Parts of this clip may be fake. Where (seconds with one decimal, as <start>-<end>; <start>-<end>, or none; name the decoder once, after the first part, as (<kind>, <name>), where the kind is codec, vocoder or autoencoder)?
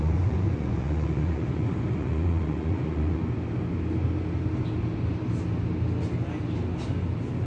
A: 0.0-3.2 (vocoder, Vocos)